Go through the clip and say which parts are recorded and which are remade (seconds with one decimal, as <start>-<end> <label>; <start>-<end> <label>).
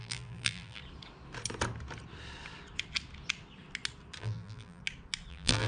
0.0-0.8 remade; 0.8-4.2 recorded; 4.2-4.8 remade; 4.8-5.3 recorded; 5.3-5.7 remade